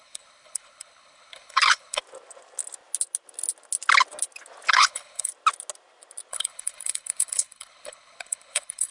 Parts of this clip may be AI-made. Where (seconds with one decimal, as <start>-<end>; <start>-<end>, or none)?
0.0-2.0; 4.7-5.3; 6.3-8.9